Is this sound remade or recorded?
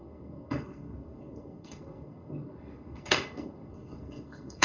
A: remade